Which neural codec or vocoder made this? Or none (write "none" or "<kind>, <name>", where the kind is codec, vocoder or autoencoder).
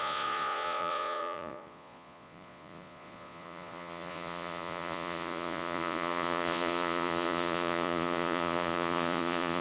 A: vocoder, Vocos